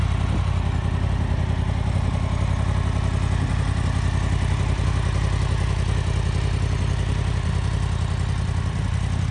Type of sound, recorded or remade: recorded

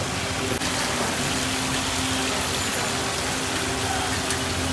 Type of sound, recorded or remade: recorded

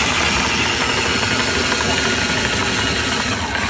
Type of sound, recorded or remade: recorded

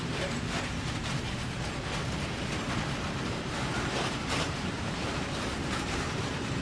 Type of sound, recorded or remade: remade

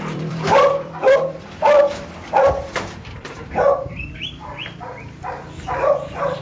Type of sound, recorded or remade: remade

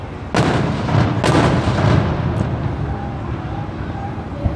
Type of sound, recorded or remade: recorded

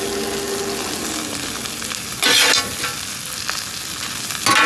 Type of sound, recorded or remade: recorded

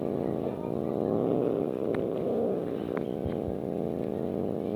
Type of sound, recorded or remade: recorded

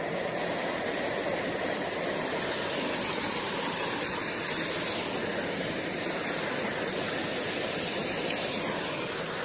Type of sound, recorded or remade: recorded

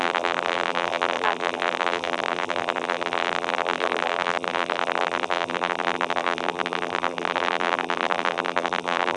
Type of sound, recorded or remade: remade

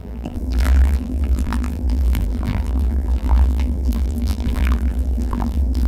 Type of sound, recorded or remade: remade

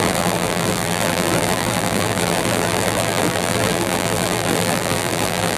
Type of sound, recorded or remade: remade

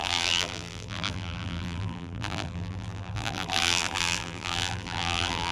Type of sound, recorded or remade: remade